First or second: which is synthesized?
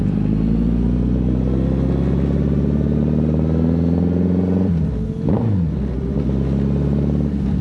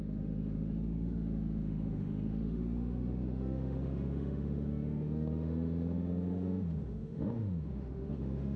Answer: second